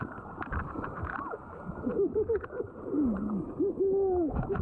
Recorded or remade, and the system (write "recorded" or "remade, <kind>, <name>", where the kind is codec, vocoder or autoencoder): recorded